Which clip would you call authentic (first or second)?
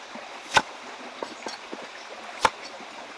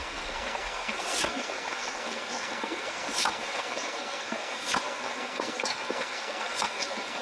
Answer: first